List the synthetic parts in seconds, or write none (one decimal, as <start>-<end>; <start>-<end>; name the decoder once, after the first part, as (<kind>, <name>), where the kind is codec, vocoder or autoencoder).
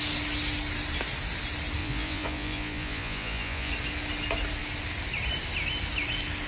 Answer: 1.8-3.7 (vocoder, Vocos)